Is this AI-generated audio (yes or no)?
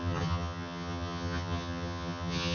yes